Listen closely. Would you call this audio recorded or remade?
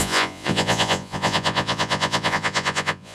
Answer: remade